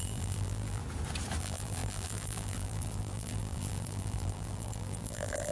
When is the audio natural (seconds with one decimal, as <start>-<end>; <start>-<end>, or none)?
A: 0.8-1.4